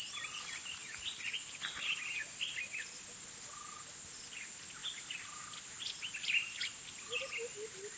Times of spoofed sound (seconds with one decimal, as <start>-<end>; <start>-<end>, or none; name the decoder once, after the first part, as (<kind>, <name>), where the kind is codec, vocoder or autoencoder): none